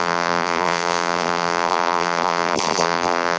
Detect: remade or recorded remade